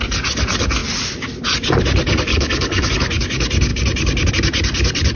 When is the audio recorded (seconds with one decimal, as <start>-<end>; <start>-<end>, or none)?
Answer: 0.0-2.3; 2.9-5.2